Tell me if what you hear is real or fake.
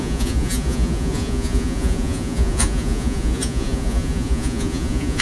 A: fake